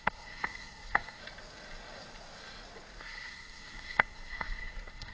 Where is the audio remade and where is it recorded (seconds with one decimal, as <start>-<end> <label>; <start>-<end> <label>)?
0.0-1.2 remade; 1.2-3.0 recorded; 3.0-5.1 remade

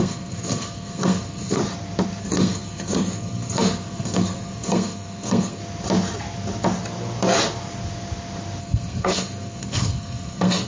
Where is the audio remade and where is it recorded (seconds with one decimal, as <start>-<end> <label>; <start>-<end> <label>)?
0.0-1.6 remade; 1.6-2.2 recorded; 2.2-5.6 remade; 5.6-8.6 recorded; 8.6-10.7 remade

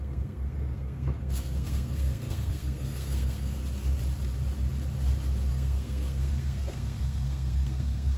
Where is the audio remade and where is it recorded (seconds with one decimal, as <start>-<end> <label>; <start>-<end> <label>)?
0.0-3.6 remade; 3.6-5.5 recorded; 5.5-8.2 remade

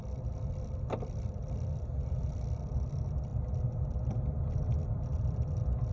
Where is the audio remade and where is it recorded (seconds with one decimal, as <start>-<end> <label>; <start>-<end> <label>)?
0.0-5.9 recorded

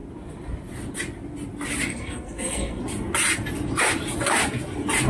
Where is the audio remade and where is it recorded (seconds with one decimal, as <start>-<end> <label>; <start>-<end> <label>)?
0.0-1.9 recorded; 1.9-2.8 remade; 2.8-5.1 recorded

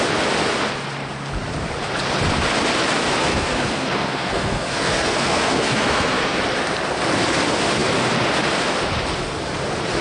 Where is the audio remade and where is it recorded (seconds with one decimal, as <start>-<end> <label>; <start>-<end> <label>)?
0.0-3.2 recorded; 3.2-6.4 remade; 6.4-10.0 recorded

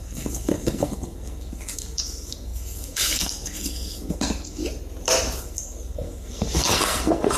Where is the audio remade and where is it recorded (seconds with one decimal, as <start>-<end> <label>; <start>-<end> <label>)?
0.0-4.6 remade; 4.6-5.4 recorded; 5.4-7.4 remade